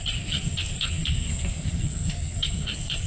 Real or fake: fake